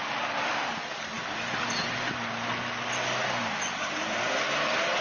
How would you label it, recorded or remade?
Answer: recorded